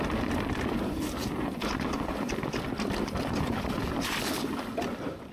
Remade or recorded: recorded